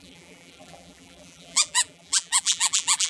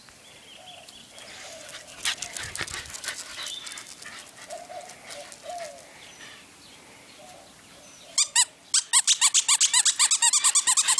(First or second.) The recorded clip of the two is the second